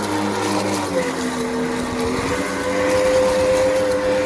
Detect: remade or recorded recorded